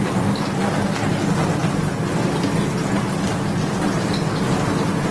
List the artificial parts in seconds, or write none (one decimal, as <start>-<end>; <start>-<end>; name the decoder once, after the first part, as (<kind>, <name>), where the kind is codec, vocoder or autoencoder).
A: none